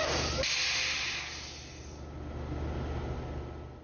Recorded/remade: recorded